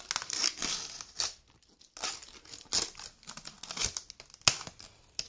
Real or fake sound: real